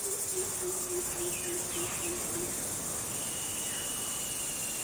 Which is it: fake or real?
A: real